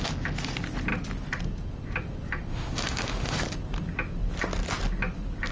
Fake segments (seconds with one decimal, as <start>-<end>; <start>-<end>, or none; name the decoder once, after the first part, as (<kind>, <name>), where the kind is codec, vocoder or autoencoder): 2.5-3.4 (autoencoder, DAC-VAE)